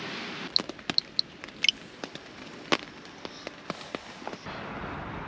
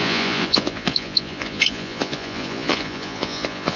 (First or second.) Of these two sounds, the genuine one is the first